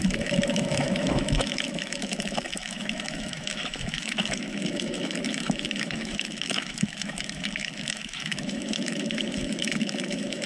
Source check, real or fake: fake